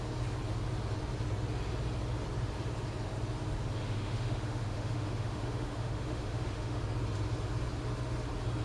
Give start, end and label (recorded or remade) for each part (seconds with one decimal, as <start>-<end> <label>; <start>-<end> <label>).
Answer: 0.0-3.8 recorded; 3.8-6.8 remade; 6.8-8.6 recorded